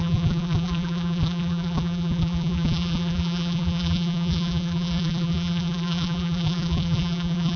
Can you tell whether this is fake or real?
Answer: fake